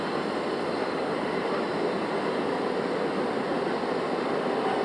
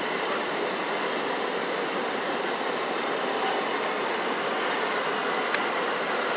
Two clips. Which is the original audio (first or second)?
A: first